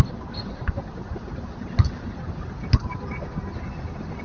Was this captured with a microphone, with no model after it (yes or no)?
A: yes